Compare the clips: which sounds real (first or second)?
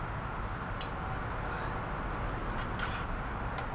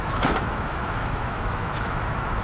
first